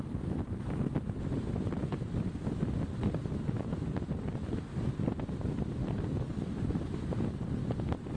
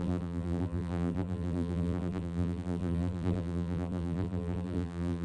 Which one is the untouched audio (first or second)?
first